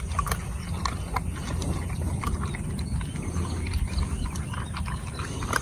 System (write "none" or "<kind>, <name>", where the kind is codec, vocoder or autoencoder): none